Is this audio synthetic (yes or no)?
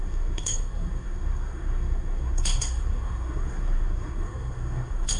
yes